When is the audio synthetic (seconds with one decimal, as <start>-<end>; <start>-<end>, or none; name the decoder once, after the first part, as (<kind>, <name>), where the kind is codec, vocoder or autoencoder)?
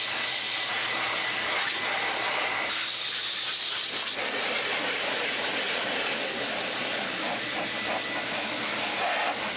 1.6-3.7 (vocoder, BigVGAN v2)